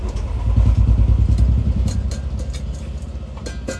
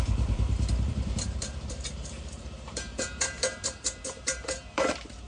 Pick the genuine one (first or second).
first